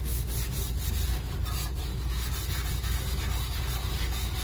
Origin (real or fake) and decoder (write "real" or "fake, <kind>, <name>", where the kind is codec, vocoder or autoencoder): real